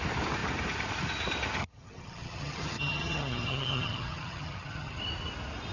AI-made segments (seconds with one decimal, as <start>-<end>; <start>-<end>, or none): 1.6-5.0